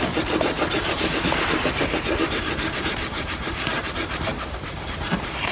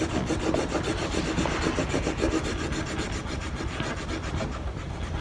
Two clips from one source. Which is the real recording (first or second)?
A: second